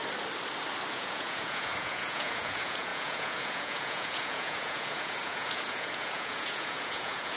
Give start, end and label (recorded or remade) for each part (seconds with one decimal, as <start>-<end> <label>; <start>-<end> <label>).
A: 0.0-0.9 recorded; 0.9-7.4 remade